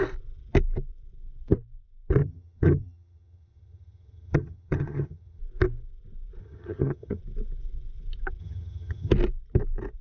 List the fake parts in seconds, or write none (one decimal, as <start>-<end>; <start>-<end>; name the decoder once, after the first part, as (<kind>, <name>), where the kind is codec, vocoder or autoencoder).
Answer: 2.2-5.4 (vocoder, HiFi-GAN); 6.4-7.2; 8.4-9.1